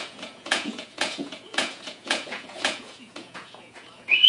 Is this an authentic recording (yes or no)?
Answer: no